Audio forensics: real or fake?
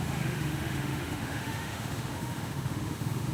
fake